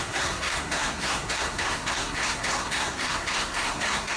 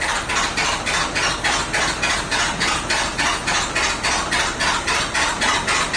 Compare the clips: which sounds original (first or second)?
second